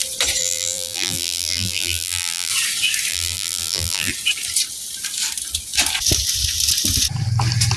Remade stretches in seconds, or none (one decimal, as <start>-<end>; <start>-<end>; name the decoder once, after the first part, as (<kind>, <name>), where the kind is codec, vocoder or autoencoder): 0.4-2.5 (vocoder, BigVGAN v2); 3.1-4.1